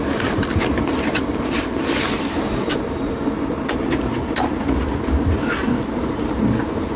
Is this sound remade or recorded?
recorded